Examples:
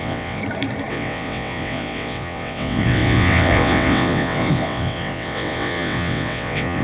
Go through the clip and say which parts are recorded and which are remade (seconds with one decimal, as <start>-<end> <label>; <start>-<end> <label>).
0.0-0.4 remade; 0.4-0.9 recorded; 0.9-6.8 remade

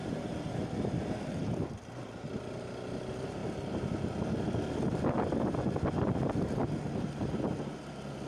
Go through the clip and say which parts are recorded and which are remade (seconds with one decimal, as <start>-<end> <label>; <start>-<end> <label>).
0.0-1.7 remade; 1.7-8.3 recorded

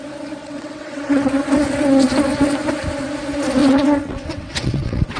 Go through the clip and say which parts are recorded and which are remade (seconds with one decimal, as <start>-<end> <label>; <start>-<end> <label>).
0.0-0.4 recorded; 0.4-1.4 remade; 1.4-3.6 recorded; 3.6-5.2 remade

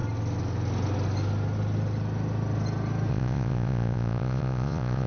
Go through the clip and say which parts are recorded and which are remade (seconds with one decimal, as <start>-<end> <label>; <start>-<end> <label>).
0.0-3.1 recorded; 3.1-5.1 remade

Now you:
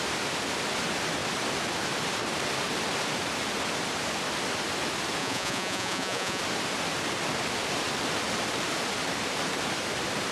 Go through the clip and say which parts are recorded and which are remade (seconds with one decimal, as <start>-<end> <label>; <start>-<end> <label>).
0.0-5.2 recorded; 5.2-6.4 remade; 6.4-10.3 recorded

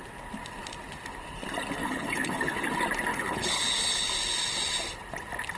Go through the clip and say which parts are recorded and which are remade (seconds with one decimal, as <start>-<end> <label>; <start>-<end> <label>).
0.0-1.8 recorded; 1.8-2.7 remade; 2.7-3.1 recorded; 3.1-4.1 remade; 4.1-5.6 recorded

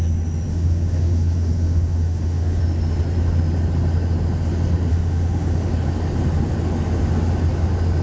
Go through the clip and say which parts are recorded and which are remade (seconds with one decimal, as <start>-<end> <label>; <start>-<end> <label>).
0.0-0.5 recorded; 0.5-2.6 remade; 2.6-4.9 recorded; 4.9-5.7 remade; 5.7-8.0 recorded